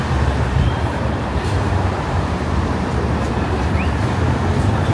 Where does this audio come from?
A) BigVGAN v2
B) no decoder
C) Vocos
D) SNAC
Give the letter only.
A